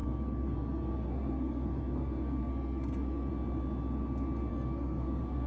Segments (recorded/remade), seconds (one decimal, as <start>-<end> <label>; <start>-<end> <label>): 0.0-3.3 remade; 3.3-4.5 recorded; 4.5-5.5 remade